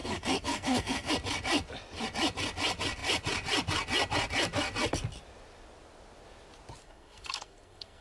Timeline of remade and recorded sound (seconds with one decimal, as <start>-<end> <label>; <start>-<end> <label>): 0.0-1.1 remade; 1.1-6.8 recorded; 6.8-8.0 remade